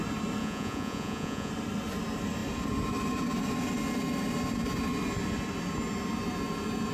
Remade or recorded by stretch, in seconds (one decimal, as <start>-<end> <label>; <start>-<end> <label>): 0.0-0.4 recorded; 0.4-1.5 remade; 1.5-6.9 recorded